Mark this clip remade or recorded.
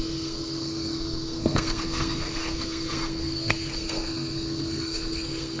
remade